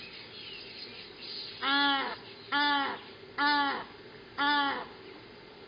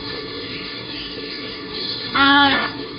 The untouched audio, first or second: first